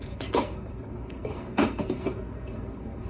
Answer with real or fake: fake